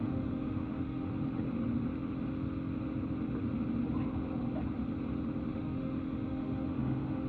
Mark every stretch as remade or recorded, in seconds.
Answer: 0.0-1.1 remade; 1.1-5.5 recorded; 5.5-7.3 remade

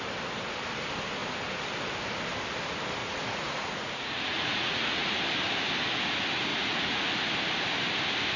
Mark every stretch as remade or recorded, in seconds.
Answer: 0.0-3.0 recorded; 3.0-5.2 remade; 5.2-6.5 recorded; 6.5-7.0 remade; 7.0-8.4 recorded

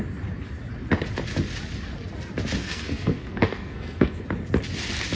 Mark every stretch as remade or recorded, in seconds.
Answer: 0.0-2.6 recorded; 2.6-4.2 remade; 4.2-5.2 recorded